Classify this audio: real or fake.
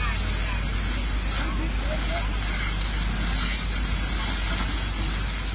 real